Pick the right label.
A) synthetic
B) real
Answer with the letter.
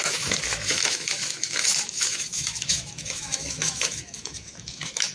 A